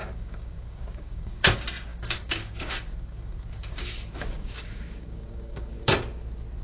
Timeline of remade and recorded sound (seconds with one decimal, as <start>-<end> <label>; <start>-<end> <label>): 0.0-1.5 remade; 1.5-1.9 recorded; 1.9-5.9 remade; 5.9-6.6 recorded